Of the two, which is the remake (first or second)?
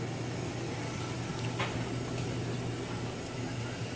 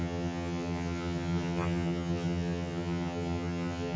second